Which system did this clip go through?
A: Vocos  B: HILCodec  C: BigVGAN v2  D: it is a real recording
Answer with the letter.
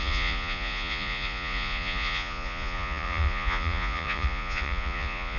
A